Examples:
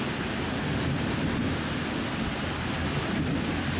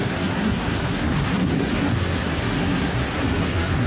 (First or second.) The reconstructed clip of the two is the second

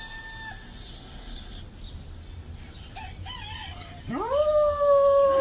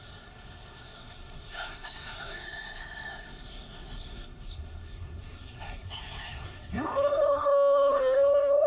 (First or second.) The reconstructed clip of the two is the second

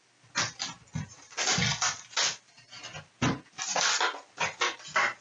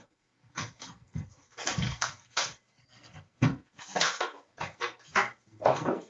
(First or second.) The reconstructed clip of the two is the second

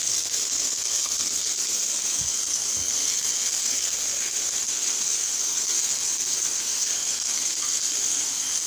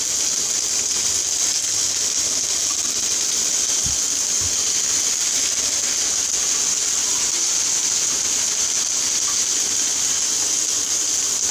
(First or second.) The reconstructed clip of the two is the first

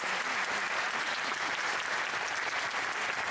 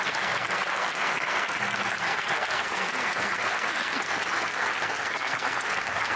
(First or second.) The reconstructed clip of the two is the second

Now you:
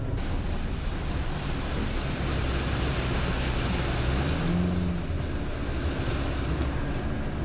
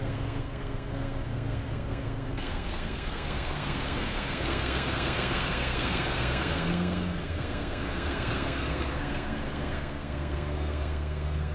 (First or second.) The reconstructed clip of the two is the second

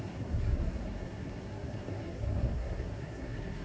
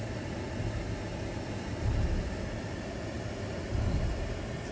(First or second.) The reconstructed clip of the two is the first